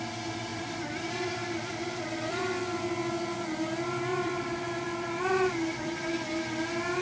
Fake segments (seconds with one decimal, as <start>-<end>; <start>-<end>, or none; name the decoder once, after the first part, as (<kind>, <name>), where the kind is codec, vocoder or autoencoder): 0.5-2.8 (vocoder, BigVGAN v2); 4.1-6.2